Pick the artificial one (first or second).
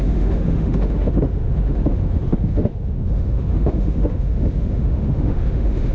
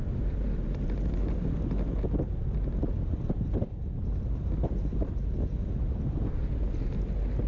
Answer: first